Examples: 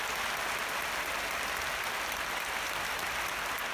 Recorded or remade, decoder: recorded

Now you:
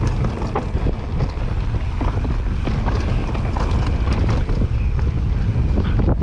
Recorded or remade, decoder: recorded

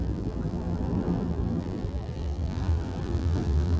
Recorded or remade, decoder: remade, vocoder, BigVGAN v2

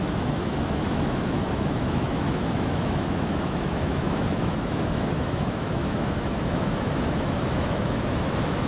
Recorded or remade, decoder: remade, autoencoder, DAC-VAE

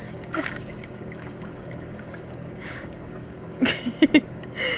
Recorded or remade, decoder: remade, codec, DAC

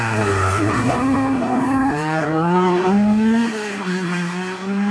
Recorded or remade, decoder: remade, codec, SNAC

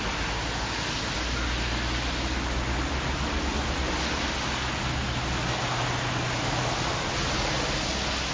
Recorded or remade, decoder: recorded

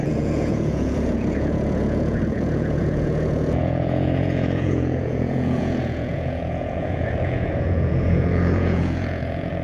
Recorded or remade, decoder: remade, vocoder, Vocos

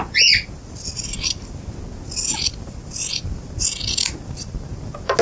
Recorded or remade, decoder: recorded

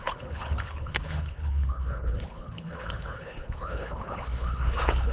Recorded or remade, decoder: remade, codec, HILCodec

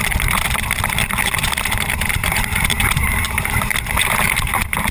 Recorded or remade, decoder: remade, vocoder, BigVGAN v2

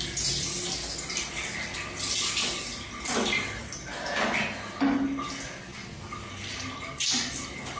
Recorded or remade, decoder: recorded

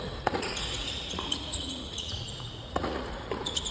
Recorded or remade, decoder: remade, vocoder, Vocos